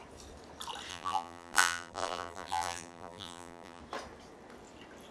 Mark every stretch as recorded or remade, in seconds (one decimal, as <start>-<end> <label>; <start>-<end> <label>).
0.0-0.9 recorded; 0.9-3.8 remade; 3.8-5.1 recorded